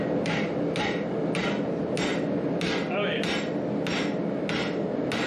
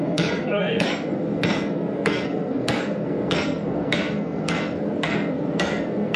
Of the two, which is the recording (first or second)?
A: first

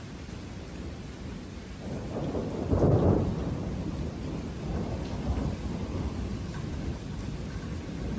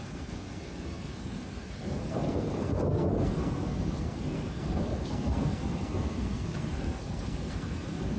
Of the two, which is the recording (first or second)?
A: first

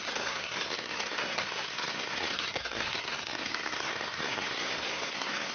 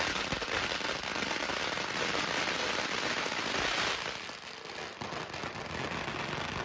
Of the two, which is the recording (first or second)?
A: second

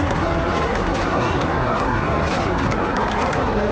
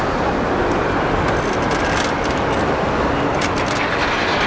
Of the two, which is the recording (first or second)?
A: second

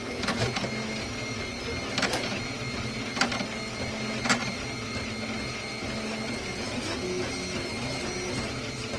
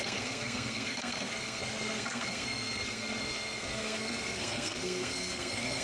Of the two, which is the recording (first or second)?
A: first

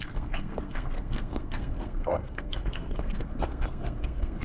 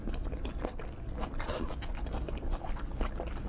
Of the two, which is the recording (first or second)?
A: second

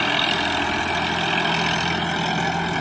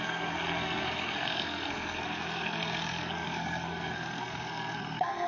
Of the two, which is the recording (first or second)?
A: first